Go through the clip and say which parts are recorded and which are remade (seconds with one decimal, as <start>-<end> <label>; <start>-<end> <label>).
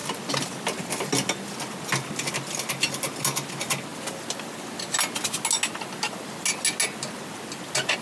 0.0-8.0 recorded